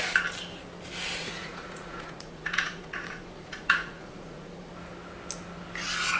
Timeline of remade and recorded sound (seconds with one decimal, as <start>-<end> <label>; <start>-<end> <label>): 0.0-1.2 recorded; 1.2-4.7 remade; 4.7-6.2 recorded